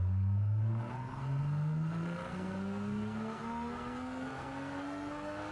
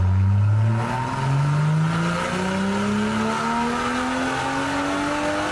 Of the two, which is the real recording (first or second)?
second